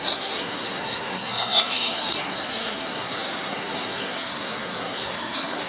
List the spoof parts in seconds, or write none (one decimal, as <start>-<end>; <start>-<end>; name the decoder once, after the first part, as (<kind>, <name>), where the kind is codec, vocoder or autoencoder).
0.0-5.7 (codec, SNAC)